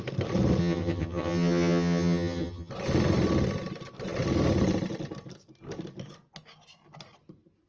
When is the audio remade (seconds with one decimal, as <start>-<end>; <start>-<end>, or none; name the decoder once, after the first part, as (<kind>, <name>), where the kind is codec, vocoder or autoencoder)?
0.6-2.7 (vocoder, HiFi-GAN)